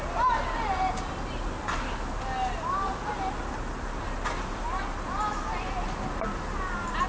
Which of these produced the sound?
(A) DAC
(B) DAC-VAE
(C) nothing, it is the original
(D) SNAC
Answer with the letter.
C